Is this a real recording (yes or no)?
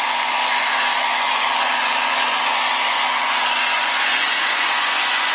no